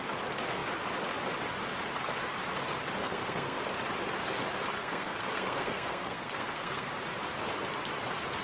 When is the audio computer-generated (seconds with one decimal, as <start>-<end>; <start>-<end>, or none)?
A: 3.0-3.6; 4.8-6.9